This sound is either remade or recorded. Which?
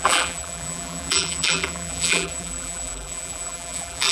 remade